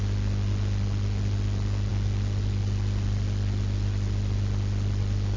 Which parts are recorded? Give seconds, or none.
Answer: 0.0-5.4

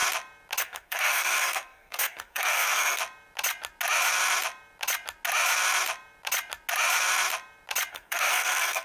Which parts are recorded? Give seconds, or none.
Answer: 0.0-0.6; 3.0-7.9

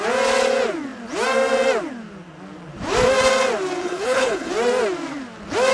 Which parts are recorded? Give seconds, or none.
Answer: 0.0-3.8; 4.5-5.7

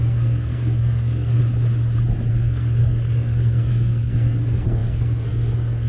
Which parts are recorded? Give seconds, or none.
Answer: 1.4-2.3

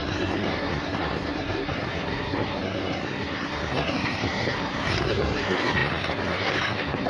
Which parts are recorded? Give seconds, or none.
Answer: none